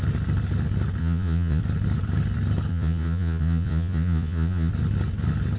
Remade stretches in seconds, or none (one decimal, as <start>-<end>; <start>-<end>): 1.0-1.6; 2.7-4.7